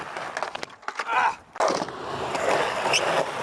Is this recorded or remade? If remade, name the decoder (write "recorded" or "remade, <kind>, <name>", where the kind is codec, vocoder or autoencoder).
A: recorded